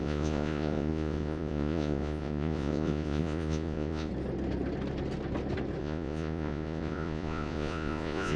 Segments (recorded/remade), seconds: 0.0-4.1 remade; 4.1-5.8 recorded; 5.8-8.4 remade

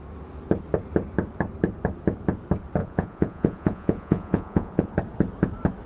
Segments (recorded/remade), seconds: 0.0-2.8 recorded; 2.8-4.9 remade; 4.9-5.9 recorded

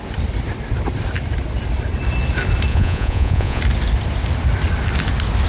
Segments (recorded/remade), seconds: 0.0-2.7 recorded; 2.7-3.6 remade; 3.6-5.5 recorded